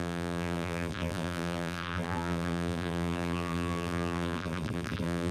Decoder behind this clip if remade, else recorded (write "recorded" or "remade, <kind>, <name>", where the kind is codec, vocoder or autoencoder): remade, vocoder, BigVGAN v2